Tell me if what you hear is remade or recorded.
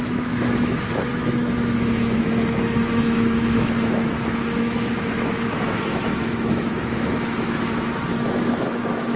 remade